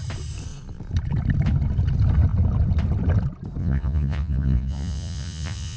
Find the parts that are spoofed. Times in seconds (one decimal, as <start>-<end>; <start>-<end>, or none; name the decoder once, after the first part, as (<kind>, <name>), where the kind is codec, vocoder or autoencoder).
3.6-5.8 (vocoder, Vocos)